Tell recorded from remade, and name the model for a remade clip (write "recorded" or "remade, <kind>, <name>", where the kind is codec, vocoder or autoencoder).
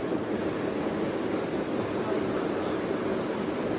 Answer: recorded